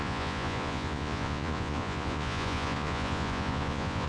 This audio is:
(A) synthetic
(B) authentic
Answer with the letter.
A